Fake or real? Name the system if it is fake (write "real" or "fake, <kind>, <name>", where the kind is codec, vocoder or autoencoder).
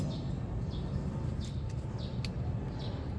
real